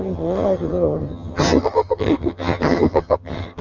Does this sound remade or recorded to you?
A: remade